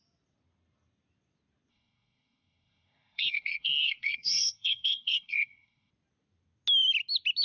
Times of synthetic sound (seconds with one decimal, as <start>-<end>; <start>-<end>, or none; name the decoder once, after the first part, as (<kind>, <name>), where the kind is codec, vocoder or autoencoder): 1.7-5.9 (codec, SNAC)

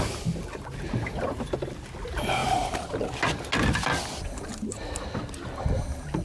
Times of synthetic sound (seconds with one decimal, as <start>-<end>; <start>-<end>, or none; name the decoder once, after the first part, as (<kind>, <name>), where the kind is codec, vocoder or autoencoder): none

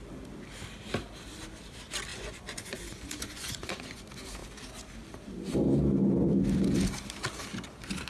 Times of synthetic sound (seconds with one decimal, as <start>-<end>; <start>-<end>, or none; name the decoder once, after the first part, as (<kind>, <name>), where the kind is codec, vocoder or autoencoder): 2.1-4.0 (vocoder, Vocos)

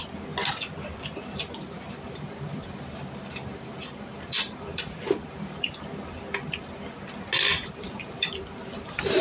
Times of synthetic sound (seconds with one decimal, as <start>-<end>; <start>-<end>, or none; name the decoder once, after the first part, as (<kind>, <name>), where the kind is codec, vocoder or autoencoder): 1.6-5.7 (vocoder, BigVGAN v2); 7.6-9.2